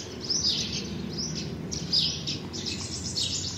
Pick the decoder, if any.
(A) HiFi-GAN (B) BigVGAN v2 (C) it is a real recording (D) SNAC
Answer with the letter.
C